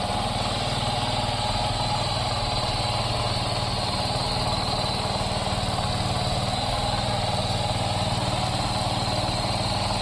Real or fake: real